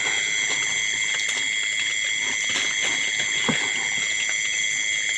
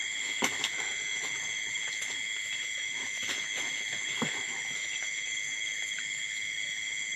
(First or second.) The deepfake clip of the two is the second